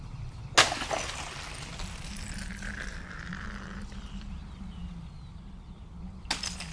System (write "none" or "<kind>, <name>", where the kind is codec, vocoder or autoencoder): none